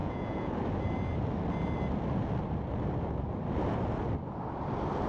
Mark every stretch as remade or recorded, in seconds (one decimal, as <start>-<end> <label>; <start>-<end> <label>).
0.0-0.5 remade; 0.5-5.1 recorded